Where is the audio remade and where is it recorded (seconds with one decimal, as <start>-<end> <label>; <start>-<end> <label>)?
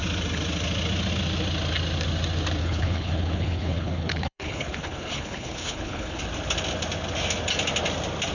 0.0-2.6 recorded; 2.6-6.2 remade; 6.2-8.3 recorded